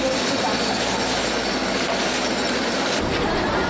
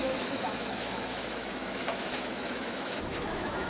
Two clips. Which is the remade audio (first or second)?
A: second